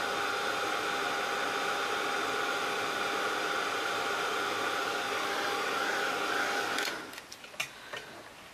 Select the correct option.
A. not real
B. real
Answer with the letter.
B